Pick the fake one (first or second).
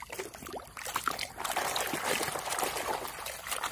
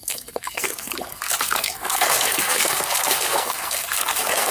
second